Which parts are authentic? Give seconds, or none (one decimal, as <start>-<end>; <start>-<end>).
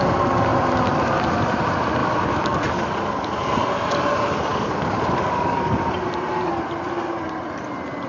0.0-2.0; 3.3-4.5; 5.9-8.1